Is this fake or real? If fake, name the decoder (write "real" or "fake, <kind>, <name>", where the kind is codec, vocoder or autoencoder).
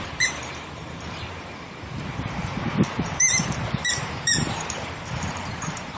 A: fake, vocoder, BigVGAN v2